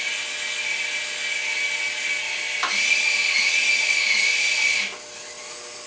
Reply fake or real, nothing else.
real